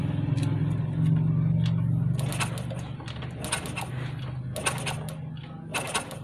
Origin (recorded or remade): recorded